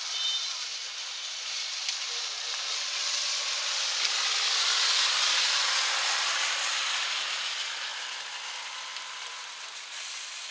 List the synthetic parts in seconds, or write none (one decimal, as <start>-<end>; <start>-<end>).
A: none